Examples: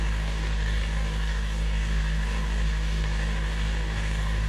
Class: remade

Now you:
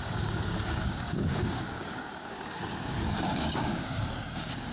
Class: remade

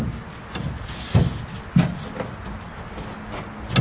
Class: recorded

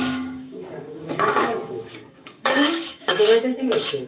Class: remade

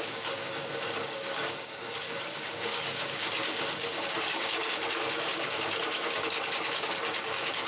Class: remade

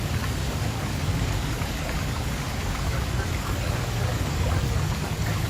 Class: remade